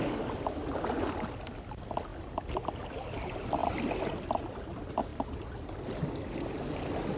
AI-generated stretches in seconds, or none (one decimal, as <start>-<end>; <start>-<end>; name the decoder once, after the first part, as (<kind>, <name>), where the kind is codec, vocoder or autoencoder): none